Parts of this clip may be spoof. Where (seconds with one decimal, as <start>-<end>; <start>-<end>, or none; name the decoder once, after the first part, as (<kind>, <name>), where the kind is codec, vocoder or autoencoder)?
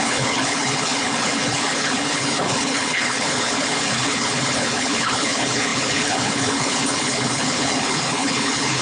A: 0.0-8.8 (codec, HILCodec)